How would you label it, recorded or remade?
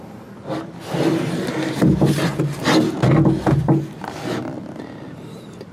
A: recorded